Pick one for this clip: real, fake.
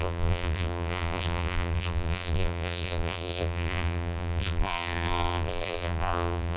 fake